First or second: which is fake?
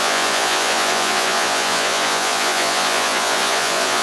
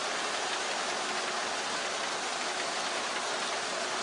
first